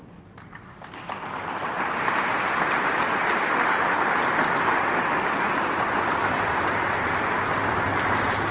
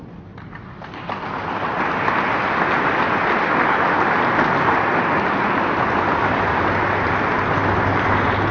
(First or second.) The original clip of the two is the second